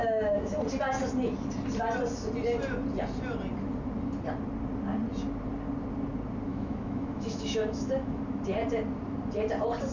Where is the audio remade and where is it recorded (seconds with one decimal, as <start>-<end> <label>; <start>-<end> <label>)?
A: 0.0-0.6 remade; 0.6-6.5 recorded; 6.5-8.2 remade; 8.2-9.9 recorded